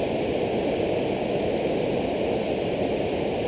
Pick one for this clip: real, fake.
real